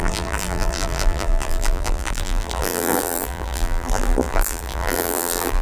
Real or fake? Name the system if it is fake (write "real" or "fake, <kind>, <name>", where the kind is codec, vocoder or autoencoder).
fake, vocoder, BigVGAN v2